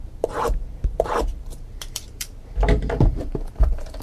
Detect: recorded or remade remade